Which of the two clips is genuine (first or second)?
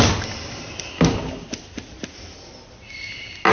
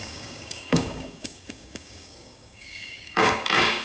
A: first